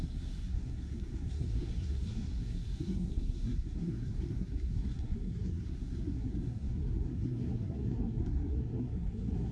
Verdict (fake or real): fake